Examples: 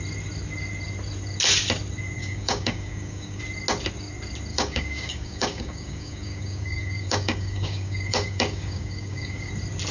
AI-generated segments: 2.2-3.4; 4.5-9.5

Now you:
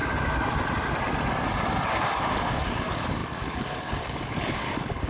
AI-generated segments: 1.9-5.1

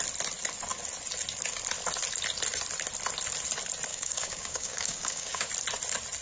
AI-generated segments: 3.9-5.5